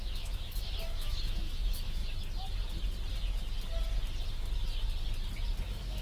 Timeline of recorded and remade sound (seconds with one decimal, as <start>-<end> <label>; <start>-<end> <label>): 0.0-2.0 remade; 2.0-5.6 recorded; 5.6-6.0 remade